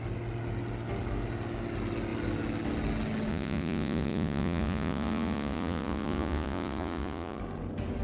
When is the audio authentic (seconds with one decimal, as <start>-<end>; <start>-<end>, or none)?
0.0-3.3; 7.4-8.0